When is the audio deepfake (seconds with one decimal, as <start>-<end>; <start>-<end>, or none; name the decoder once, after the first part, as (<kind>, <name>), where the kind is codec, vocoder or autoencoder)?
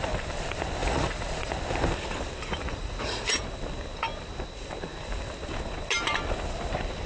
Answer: 0.8-1.5 (vocoder, Vocos); 2.6-3.3